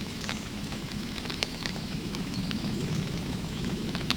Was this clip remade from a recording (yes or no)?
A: yes